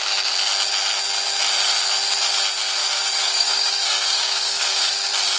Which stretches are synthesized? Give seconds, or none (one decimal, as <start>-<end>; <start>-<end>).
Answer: 2.8-4.9